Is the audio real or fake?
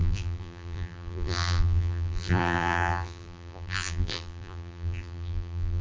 fake